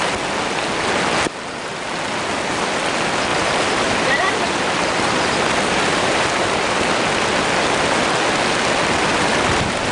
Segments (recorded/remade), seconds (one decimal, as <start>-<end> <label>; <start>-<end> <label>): 0.0-3.3 recorded; 3.3-6.7 remade; 6.7-9.9 recorded